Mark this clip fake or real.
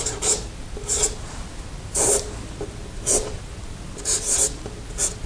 real